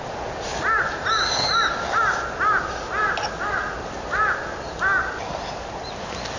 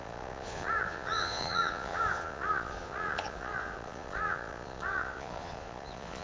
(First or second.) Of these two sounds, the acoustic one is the first